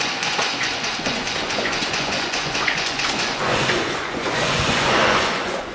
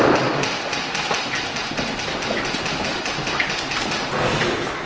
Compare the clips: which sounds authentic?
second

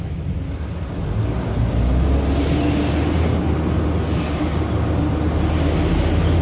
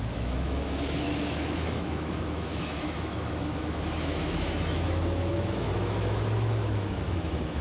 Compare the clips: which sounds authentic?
first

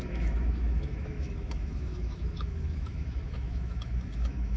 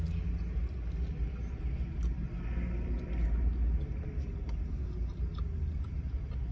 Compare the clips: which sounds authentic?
second